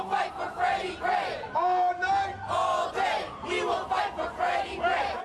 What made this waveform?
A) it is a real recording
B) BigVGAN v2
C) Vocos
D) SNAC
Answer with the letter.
A